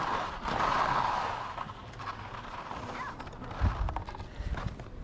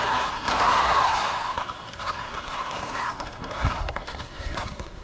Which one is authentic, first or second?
first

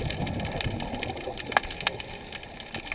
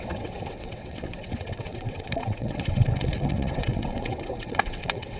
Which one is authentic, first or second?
first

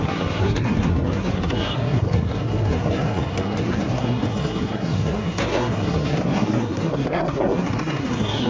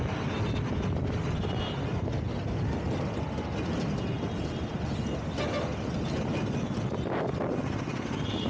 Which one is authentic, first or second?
second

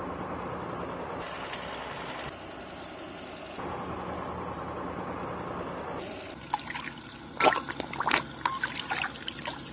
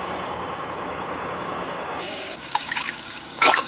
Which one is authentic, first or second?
first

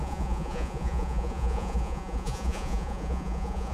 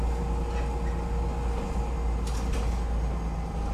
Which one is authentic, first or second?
second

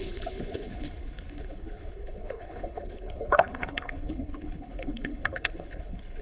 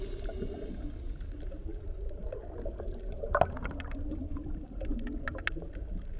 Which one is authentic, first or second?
second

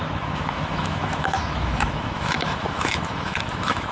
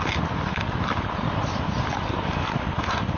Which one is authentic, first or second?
second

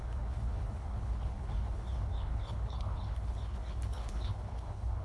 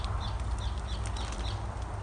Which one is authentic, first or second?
second